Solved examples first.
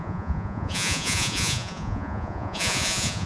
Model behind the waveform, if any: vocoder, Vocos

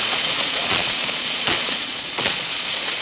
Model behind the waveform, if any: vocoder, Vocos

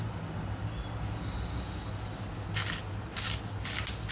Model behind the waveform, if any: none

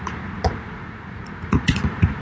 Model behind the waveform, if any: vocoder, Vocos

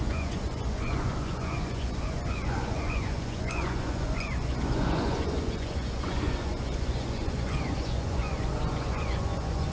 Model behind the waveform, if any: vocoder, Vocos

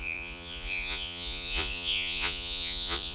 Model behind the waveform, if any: vocoder, Vocos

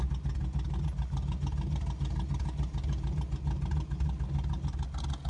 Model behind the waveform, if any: none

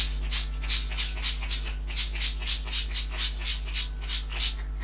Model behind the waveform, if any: none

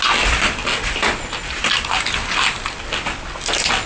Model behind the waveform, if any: none